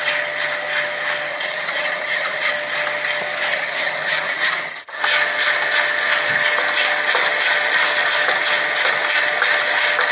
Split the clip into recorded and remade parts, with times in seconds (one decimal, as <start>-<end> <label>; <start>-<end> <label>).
0.0-1.3 recorded; 1.3-2.5 remade; 2.5-3.5 recorded; 3.5-5.0 remade; 5.0-10.1 recorded